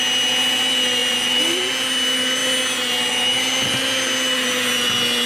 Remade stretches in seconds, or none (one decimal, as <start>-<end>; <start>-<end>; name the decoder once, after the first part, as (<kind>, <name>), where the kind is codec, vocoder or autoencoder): 1.0-1.6 (vocoder, BigVGAN v2)